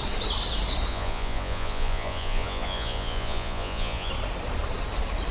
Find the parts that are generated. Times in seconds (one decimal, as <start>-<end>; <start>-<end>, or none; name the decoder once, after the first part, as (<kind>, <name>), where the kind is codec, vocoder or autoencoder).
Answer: 0.9-4.1 (vocoder, Vocos)

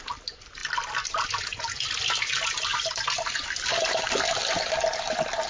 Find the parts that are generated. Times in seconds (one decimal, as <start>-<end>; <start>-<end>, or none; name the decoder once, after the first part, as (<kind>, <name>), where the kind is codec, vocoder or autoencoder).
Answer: none